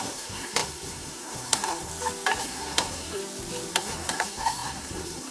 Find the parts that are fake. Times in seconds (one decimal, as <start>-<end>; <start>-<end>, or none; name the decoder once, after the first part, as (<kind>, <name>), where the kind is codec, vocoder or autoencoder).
0.0-1.9 (codec, SNAC); 2.4-3.2; 3.7-5.3